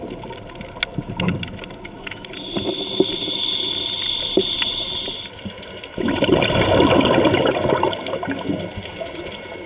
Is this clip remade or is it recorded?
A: recorded